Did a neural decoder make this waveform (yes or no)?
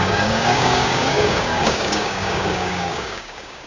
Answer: yes